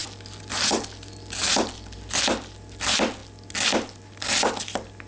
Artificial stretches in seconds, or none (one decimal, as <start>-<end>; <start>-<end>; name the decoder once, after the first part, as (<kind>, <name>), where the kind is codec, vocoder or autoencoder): none

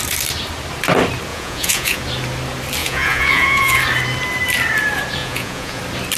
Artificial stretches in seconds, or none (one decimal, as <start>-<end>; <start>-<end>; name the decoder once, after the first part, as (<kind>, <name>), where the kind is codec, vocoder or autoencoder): 1.3-2.0 (vocoder, Vocos); 2.8-3.8; 5.2-5.8